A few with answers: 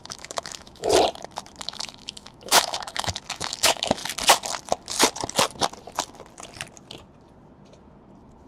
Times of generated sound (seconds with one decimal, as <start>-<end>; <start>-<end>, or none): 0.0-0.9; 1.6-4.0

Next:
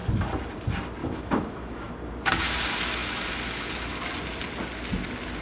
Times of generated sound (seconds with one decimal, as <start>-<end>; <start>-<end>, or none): 1.0-1.9

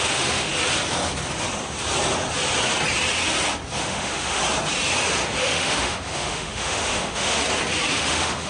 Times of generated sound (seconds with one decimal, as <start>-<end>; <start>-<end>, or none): 0.0-0.5; 3.8-4.4; 5.4-7.4; 7.9-8.5